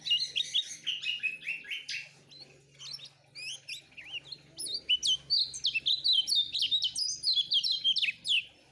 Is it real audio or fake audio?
real